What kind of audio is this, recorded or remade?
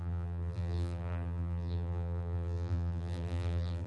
remade